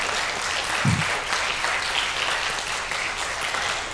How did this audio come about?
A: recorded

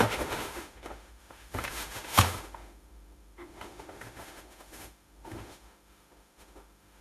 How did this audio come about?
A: remade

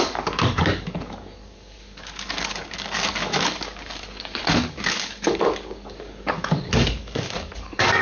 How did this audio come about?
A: remade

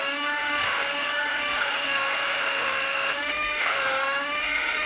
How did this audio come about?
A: remade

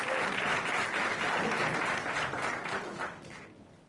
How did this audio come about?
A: recorded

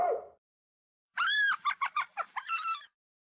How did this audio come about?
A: remade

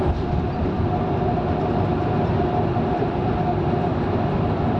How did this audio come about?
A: remade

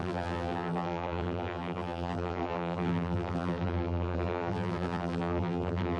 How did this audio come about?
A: remade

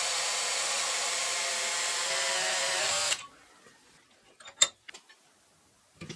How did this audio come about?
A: remade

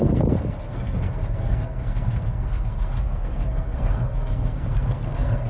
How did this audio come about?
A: remade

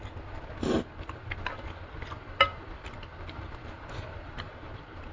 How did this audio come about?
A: recorded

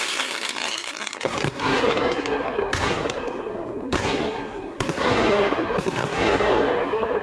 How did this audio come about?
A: remade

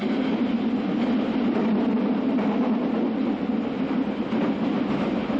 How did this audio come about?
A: recorded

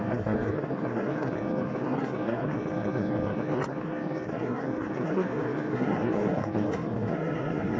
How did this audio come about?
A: remade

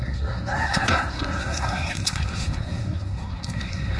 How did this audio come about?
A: remade